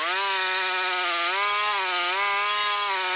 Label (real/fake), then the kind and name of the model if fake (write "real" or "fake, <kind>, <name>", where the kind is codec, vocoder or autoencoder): real